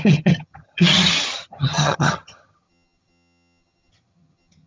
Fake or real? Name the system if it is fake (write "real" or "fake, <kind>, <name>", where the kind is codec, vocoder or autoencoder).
fake, vocoder, HiFi-GAN